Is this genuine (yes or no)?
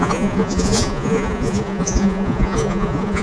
no